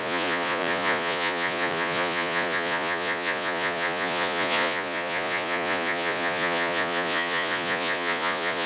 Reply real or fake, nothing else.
fake